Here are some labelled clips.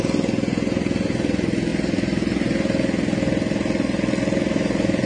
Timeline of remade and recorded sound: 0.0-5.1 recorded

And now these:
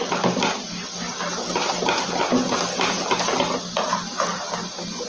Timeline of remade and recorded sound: 0.0-5.1 recorded

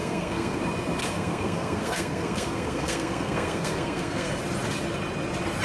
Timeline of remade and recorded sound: 0.0-0.6 remade; 0.6-1.0 recorded; 1.0-4.4 remade; 4.4-5.6 recorded

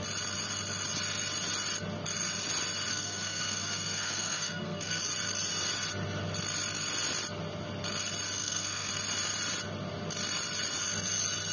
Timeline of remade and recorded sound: 0.0-2.9 recorded; 2.9-5.0 remade; 5.0-8.4 recorded; 8.4-8.9 remade; 8.9-11.5 recorded

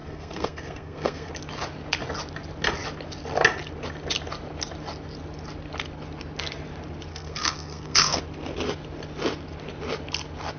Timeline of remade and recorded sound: 0.0-1.3 remade; 1.3-7.1 recorded; 7.1-8.2 remade; 8.2-10.6 recorded

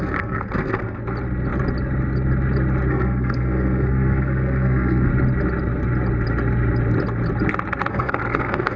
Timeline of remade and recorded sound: 0.0-1.0 remade; 1.0-2.9 recorded; 2.9-5.1 remade; 5.1-7.9 recorded; 7.9-8.8 remade

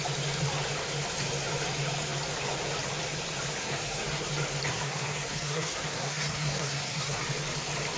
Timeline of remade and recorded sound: 0.0-3.6 recorded; 3.6-4.3 remade; 4.3-4.7 recorded; 4.7-7.2 remade; 7.2-8.0 recorded